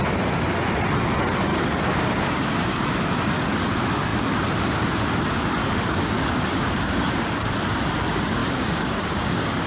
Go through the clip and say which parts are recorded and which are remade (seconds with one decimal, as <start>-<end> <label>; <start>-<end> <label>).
0.0-1.5 recorded; 1.5-2.8 remade; 2.8-5.6 recorded; 5.6-7.5 remade; 7.5-8.4 recorded; 8.4-9.7 remade

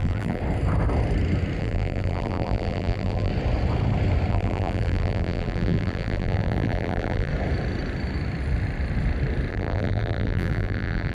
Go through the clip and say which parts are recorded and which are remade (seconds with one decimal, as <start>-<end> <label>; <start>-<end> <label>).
0.0-0.4 remade; 0.4-1.6 recorded; 1.6-3.3 remade; 3.3-4.3 recorded; 4.3-7.3 remade; 7.3-9.5 recorded; 9.5-11.1 remade